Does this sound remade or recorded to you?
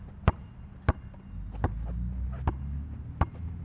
recorded